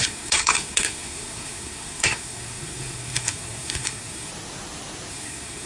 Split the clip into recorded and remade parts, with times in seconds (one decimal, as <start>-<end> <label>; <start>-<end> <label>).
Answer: 0.0-4.3 remade; 4.3-5.1 recorded; 5.1-5.7 remade